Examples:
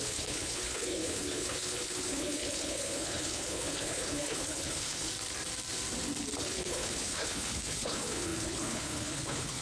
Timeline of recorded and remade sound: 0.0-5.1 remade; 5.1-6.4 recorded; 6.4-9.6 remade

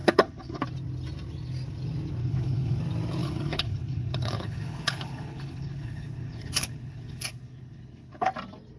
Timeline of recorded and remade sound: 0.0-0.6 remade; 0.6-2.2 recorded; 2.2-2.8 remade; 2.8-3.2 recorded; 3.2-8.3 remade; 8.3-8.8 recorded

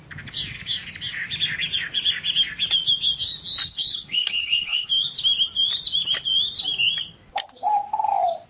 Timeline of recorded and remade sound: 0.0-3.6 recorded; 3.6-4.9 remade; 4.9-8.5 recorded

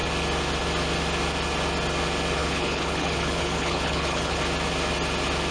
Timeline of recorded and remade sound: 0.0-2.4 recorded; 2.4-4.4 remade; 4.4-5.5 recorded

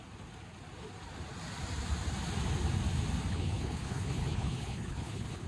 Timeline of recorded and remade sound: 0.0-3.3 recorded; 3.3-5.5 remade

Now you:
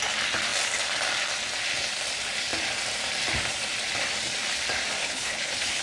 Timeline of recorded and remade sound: 0.0-5.0 recorded; 5.0-5.8 remade

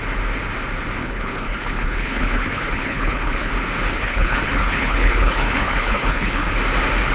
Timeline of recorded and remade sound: 0.0-1.0 recorded; 1.0-3.5 remade; 3.5-3.9 recorded; 3.9-6.5 remade; 6.5-7.1 recorded

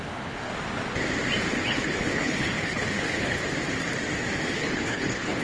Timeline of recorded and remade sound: 0.0-0.5 remade; 0.5-1.5 recorded; 1.5-3.4 remade; 3.4-4.5 recorded; 4.5-5.4 remade